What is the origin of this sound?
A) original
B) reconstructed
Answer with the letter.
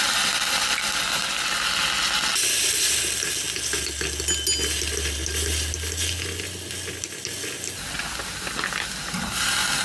A